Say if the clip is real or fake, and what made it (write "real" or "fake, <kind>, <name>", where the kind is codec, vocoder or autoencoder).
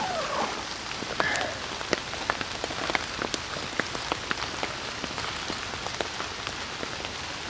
real